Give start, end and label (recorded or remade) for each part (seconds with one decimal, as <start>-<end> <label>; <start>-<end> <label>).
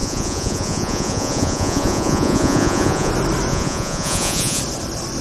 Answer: 0.0-3.1 remade; 3.1-3.5 recorded; 3.5-4.6 remade; 4.6-5.2 recorded